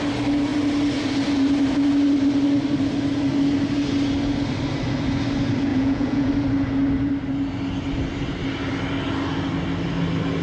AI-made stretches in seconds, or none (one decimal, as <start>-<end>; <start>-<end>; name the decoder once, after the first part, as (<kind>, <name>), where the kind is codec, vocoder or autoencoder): 5.7-6.3 (vocoder, Vocos)

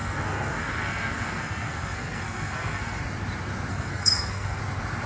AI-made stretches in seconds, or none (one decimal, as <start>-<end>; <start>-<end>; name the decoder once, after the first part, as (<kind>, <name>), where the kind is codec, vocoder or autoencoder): 0.0-3.0 (codec, SNAC); 3.7-4.6

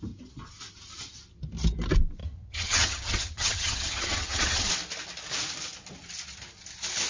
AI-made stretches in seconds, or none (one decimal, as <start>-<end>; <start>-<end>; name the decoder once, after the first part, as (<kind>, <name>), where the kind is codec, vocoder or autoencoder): 2.2-4.7 (vocoder, HiFi-GAN)

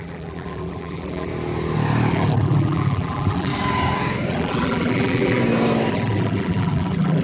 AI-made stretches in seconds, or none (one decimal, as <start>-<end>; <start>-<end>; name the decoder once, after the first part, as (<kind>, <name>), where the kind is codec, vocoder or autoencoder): 0.0-1.3 (vocoder, BigVGAN v2); 2.1-3.5; 4.3-5.4; 5.9-7.2

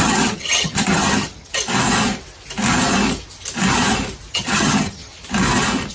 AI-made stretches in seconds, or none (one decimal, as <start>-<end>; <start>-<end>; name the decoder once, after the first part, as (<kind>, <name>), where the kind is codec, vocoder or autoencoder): 0.0-1.5 (vocoder, HiFi-GAN); 4.3-5.1

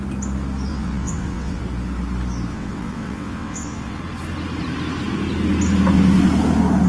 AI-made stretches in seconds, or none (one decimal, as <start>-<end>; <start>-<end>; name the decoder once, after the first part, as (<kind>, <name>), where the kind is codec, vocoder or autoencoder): 0.7-1.6 (vocoder, WaveNeXt); 2.5-4.0

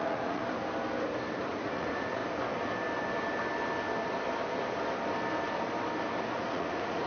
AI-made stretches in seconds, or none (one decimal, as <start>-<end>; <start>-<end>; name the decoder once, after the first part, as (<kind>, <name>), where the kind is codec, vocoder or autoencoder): 0.0-0.4 (vocoder, Vocos); 1.5-2.2; 6.5-7.1